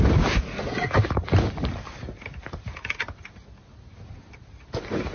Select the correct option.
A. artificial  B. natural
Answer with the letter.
B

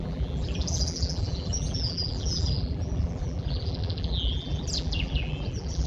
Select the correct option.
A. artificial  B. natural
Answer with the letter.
A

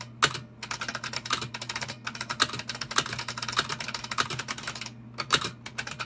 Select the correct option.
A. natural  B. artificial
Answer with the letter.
A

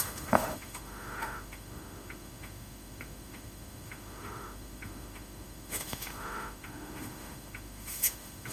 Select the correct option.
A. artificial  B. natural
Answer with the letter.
A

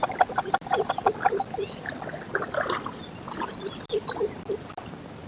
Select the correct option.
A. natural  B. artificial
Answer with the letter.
A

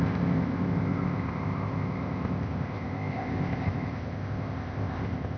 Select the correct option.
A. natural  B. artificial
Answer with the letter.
B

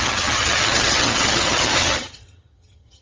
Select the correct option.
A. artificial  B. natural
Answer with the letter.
A